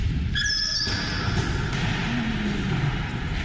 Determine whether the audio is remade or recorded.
recorded